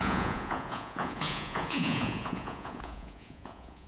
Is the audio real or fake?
fake